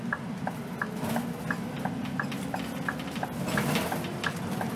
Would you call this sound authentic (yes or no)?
yes